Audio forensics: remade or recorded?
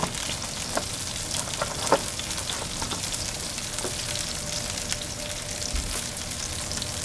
recorded